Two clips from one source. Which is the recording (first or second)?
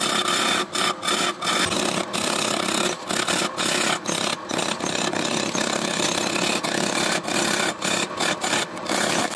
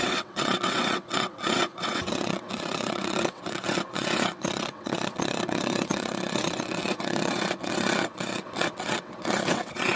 first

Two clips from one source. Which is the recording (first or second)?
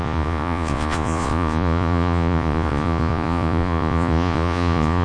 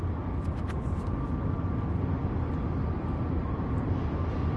second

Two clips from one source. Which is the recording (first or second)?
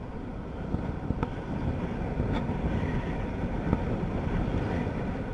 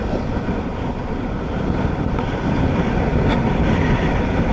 first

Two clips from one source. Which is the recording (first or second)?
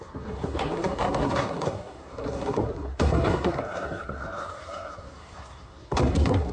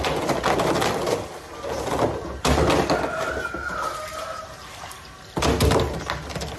second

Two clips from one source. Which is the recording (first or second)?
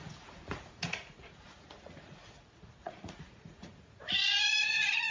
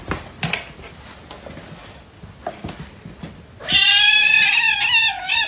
second